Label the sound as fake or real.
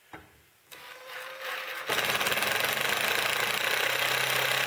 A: real